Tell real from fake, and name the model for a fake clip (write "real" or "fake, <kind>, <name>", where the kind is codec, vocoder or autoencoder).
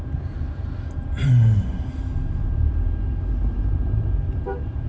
fake, vocoder, BigVGAN v2